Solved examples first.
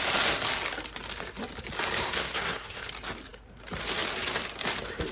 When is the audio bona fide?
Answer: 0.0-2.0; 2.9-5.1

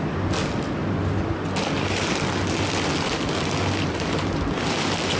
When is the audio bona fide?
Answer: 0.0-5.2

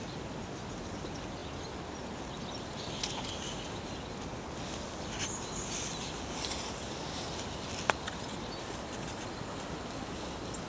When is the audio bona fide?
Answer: 0.0-10.7

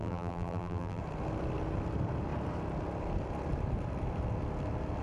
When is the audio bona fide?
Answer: 1.0-5.0